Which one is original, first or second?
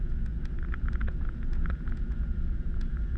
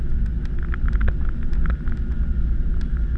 second